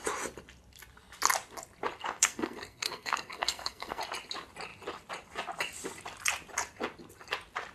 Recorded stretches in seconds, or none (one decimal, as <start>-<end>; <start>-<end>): 0.0-2.0; 4.0-7.7